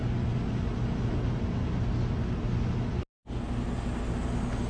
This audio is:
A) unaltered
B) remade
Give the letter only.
A